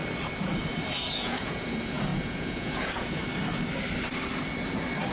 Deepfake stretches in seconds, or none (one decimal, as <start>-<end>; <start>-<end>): 1.1-3.2